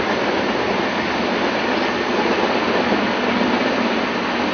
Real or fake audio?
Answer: real